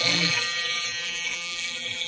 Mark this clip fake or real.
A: fake